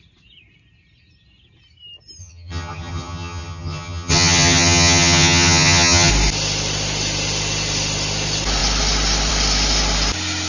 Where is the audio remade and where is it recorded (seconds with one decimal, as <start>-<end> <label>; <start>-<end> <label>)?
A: 0.0-2.2 recorded; 2.2-6.1 remade; 6.1-10.5 recorded